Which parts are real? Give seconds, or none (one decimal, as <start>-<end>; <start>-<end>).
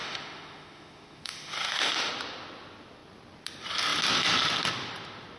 2.1-5.4